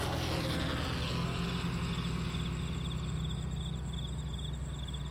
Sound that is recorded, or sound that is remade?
recorded